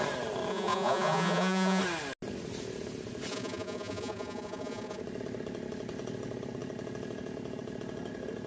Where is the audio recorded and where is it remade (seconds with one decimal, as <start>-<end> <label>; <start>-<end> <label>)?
0.0-0.5 recorded; 0.5-1.8 remade; 1.8-3.3 recorded; 3.3-5.0 remade; 5.0-8.5 recorded